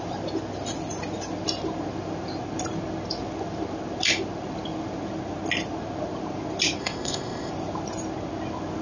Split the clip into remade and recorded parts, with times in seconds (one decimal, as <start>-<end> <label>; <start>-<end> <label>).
0.0-6.8 recorded; 6.8-7.5 remade; 7.5-8.8 recorded

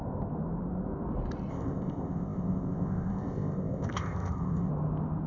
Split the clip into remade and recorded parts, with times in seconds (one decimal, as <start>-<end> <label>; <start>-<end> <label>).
0.0-1.5 recorded; 1.5-4.7 remade; 4.7-5.3 recorded

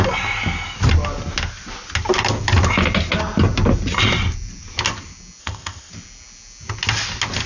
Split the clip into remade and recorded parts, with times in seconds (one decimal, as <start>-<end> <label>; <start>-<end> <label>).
0.0-5.4 recorded; 5.4-5.9 remade; 5.9-7.5 recorded